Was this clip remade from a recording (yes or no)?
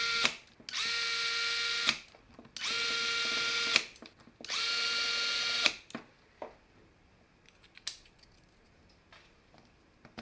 no